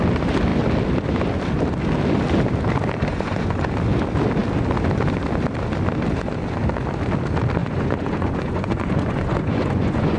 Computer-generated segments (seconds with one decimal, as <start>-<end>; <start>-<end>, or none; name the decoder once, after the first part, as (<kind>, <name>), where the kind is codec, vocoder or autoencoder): 3.1-3.6 (vocoder, Vocos); 7.6-10.2